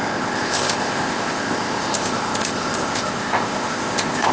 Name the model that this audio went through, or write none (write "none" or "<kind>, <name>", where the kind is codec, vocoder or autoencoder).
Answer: codec, ZipCodec